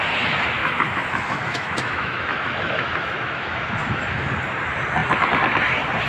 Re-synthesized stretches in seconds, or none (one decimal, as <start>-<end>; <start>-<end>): 0.6-4.3